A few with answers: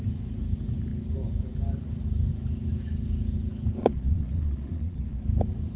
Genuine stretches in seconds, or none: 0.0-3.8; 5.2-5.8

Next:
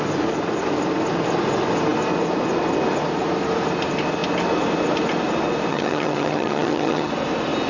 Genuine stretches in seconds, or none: 0.0-5.7; 7.1-7.7

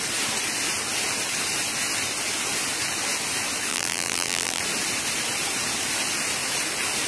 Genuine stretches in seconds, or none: 0.0-3.7; 4.6-7.1

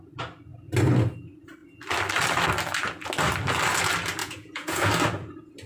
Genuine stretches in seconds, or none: 0.0-4.2; 4.9-5.7